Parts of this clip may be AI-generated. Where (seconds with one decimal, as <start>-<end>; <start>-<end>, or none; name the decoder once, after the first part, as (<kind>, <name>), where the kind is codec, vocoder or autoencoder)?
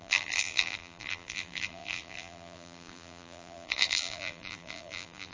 0.0-5.3 (vocoder, BigVGAN v2)